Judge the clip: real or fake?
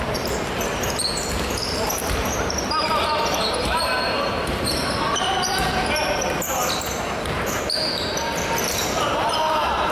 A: fake